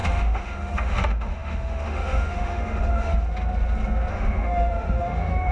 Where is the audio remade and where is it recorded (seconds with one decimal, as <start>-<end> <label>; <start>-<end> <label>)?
0.0-3.1 remade; 3.1-4.1 recorded; 4.1-5.5 remade